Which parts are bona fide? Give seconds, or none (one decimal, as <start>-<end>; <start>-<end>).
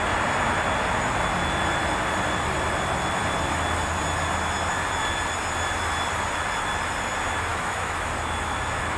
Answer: 0.0-7.5; 8.1-9.0